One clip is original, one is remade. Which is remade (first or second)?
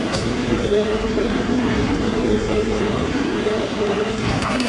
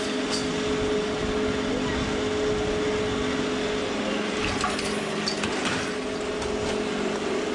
first